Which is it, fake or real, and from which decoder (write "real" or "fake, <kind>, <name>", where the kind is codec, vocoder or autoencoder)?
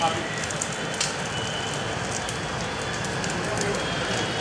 real